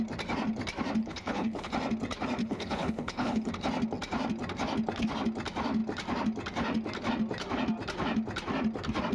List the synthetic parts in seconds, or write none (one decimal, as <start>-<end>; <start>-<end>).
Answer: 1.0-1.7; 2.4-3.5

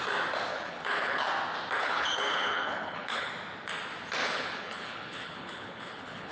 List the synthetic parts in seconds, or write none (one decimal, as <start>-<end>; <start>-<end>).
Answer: 0.5-1.3; 1.8-3.3; 4.2-6.3

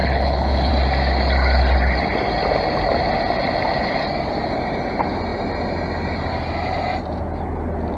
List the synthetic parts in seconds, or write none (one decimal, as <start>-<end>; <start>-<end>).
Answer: 0.0-0.7

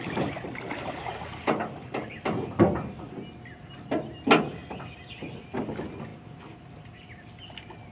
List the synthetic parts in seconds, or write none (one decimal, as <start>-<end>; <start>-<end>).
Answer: none

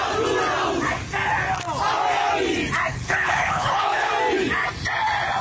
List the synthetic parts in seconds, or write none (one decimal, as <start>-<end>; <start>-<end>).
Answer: 2.9-4.1